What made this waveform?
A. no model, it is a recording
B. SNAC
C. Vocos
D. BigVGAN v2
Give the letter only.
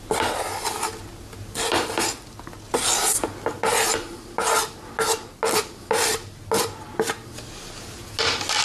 A